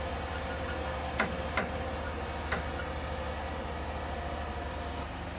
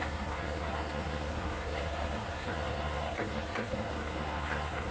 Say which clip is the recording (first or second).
first